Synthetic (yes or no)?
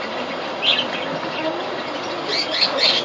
no